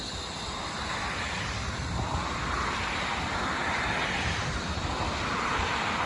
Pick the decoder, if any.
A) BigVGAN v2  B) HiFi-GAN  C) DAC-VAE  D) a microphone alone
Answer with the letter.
D